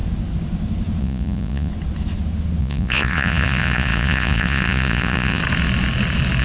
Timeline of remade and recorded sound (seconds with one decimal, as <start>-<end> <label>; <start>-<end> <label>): 0.0-1.0 recorded; 1.0-1.7 remade; 1.7-2.6 recorded; 2.6-5.4 remade; 5.4-6.4 recorded